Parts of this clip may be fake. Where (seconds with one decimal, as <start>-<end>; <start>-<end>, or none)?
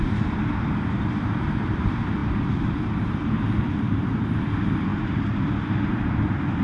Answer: 0.0-4.9; 5.6-6.6